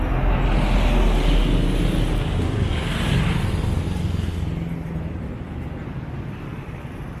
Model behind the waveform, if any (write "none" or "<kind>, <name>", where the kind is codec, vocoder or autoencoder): none